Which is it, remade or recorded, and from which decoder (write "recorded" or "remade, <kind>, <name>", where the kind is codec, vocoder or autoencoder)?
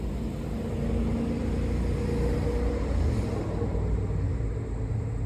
recorded